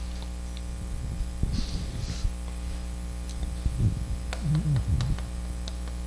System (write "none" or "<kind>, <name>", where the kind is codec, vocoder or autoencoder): none